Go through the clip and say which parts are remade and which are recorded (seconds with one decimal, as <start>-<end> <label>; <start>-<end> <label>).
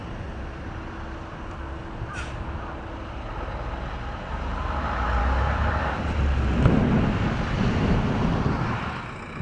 0.0-5.2 recorded; 5.2-6.0 remade; 6.0-9.4 recorded